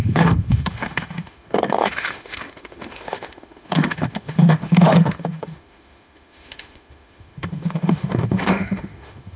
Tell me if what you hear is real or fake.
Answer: fake